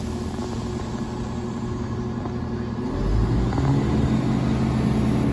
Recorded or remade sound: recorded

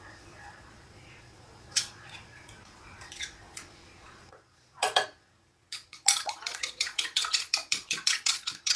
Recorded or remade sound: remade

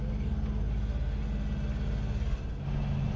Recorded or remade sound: recorded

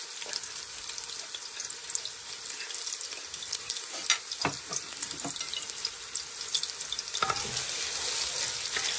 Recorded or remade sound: recorded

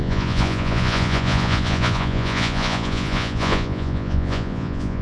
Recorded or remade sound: remade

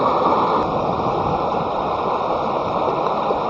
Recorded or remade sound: recorded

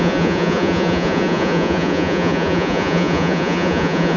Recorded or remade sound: remade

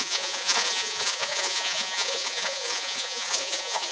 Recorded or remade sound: remade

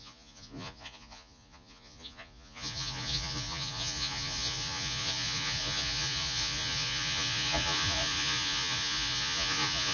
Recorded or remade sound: remade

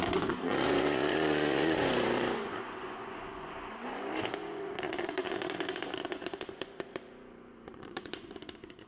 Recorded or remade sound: remade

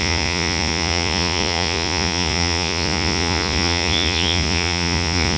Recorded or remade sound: remade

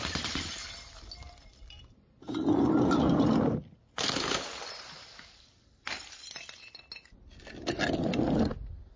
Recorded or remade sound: recorded